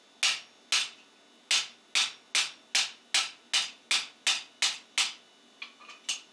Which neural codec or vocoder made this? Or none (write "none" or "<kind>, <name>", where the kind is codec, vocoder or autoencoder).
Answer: none